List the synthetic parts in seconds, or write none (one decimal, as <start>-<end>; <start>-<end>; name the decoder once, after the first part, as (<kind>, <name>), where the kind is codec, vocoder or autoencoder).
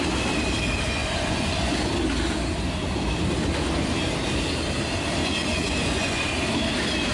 1.0-1.9 (vocoder, Vocos); 5.2-6.3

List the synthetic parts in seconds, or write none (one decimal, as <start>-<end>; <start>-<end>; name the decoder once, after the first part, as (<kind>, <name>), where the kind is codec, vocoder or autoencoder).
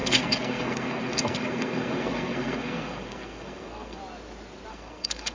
0.0-4.0 (codec, SNAC); 4.7-5.3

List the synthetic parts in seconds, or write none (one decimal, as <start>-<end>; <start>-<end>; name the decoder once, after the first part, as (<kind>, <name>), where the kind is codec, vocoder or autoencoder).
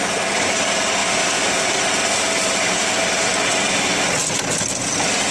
1.0-2.3 (vocoder, BigVGAN v2)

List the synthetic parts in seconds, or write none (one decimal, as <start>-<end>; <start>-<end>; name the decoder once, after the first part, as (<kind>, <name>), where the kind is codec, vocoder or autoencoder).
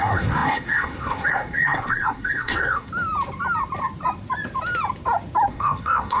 0.0-2.9 (codec, SNAC); 5.5-6.2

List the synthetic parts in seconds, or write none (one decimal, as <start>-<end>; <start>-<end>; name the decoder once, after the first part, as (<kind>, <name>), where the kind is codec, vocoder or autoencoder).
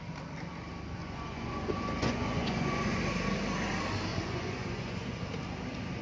1.0-3.0 (vocoder, Vocos); 4.1-5.2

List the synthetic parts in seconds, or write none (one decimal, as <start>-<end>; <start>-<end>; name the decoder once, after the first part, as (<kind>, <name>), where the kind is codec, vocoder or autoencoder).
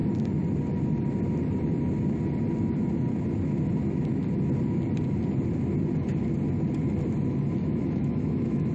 7.6-8.7 (autoencoder, DAC-VAE)